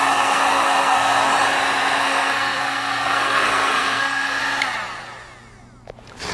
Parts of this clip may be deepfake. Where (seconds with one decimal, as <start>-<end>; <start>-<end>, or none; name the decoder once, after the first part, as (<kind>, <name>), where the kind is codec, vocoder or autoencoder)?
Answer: 0.0-1.3 (codec, SNAC); 2.0-4.4